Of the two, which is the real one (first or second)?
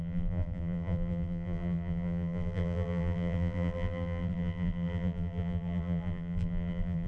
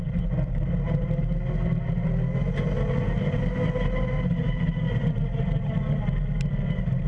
second